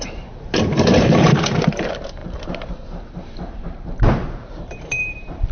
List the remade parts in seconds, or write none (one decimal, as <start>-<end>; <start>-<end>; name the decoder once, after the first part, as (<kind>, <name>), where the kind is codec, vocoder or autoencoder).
0.0-5.5 (vocoder, BigVGAN v2)